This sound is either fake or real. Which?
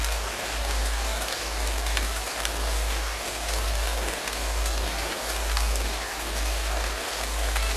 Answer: fake